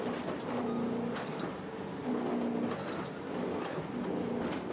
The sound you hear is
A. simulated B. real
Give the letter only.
B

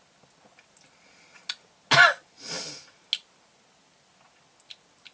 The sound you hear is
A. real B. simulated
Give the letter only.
A